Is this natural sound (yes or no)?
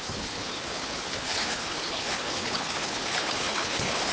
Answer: no